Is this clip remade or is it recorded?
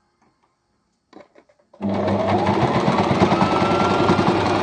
recorded